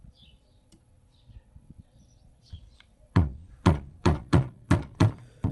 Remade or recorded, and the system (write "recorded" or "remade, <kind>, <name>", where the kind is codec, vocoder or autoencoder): remade, vocoder, Vocos